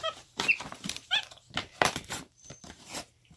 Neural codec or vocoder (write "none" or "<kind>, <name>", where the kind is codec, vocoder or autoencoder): vocoder, BigVGAN v2